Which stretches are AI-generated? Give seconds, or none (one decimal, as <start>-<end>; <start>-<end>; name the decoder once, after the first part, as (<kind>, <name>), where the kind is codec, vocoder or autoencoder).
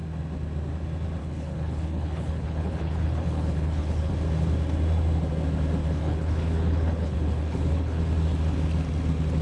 1.2-4.1 (codec, HILCodec); 5.8-8.0